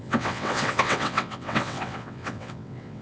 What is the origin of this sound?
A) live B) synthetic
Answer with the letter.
B